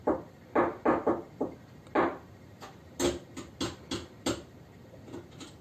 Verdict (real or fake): real